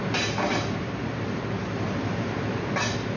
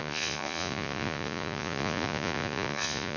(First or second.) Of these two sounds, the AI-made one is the second